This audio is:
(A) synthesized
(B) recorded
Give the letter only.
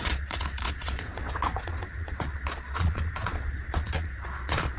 A